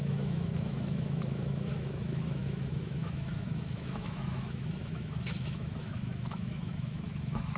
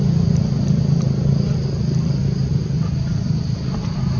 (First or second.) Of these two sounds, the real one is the second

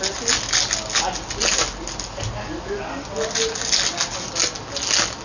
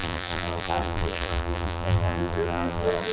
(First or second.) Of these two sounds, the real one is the first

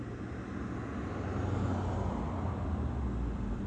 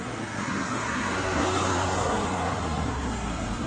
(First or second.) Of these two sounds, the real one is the first